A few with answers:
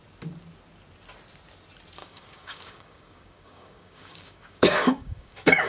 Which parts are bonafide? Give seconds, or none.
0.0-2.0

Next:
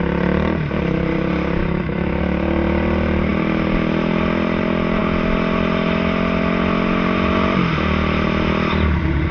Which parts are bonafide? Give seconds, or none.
0.0-1.6; 2.2-9.3

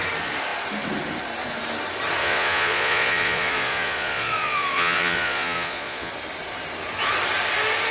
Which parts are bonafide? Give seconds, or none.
0.0-2.2; 6.1-7.9